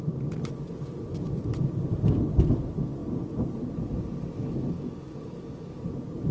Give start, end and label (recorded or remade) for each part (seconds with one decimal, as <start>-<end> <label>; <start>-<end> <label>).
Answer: 0.0-6.3 recorded